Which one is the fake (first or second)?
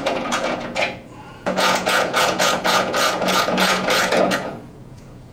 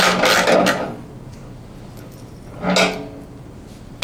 first